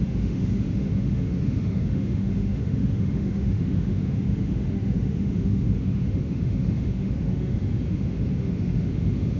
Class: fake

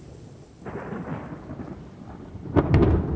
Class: real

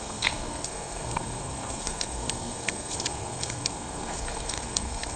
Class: fake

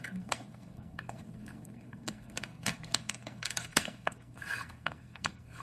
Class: fake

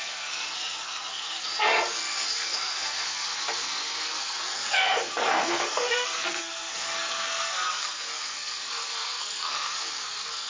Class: fake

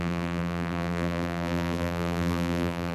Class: fake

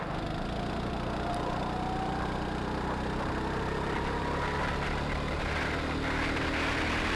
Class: real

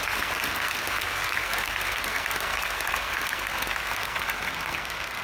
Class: fake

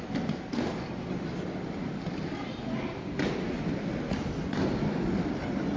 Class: real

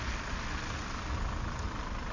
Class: real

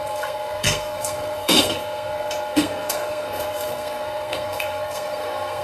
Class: fake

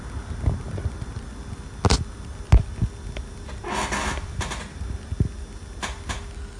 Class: real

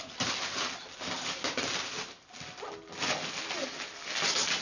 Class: real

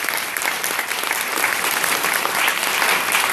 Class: real